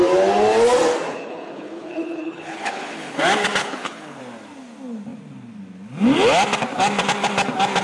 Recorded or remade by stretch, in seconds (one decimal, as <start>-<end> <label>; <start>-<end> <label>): 0.0-1.1 recorded; 1.1-3.2 remade; 3.2-3.6 recorded; 3.6-4.2 remade; 4.2-7.8 recorded